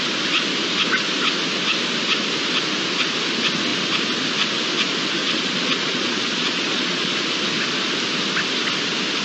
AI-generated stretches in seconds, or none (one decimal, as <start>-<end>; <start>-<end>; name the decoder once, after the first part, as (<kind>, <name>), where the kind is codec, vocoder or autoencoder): 5.2-7.1 (vocoder, Vocos)